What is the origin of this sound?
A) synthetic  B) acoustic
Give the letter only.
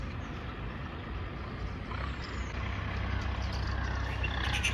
B